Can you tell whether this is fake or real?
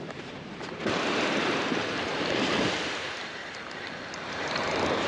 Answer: fake